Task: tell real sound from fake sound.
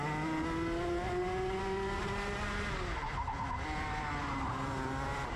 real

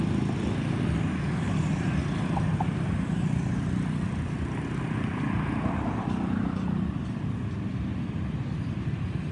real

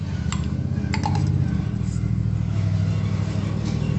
real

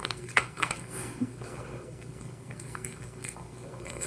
fake